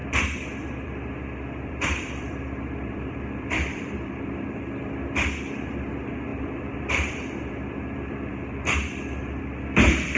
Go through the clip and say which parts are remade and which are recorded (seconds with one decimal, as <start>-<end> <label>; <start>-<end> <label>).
0.0-4.6 remade; 4.6-6.3 recorded; 6.3-9.4 remade; 9.4-10.2 recorded